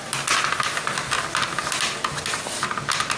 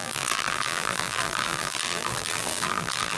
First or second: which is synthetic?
second